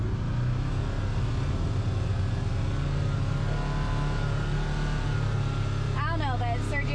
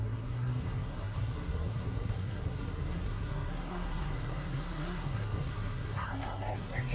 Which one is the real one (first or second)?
first